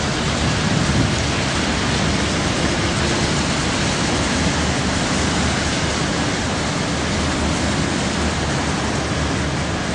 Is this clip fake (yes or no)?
no